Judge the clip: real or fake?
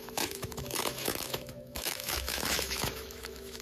fake